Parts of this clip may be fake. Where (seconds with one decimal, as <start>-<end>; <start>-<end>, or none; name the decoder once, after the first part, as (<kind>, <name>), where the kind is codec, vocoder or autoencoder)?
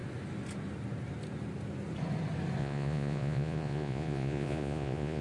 2.6-5.2 (vocoder, Vocos)